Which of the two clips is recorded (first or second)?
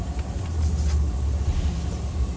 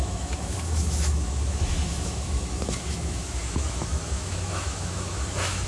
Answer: first